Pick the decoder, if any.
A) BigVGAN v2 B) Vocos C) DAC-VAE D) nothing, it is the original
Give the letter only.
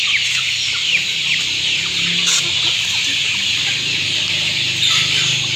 D